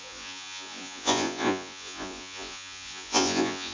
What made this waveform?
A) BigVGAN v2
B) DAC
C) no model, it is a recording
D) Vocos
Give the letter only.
D